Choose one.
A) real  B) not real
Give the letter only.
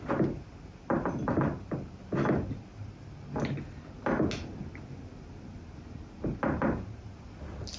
A